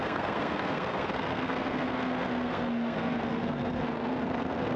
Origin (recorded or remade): remade